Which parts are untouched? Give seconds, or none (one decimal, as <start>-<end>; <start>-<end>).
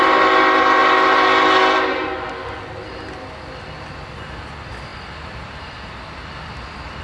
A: 0.0-7.0